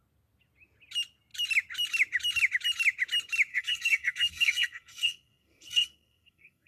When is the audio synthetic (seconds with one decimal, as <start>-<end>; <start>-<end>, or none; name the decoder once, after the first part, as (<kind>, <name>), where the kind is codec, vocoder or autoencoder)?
3.5-6.7 (codec, SNAC)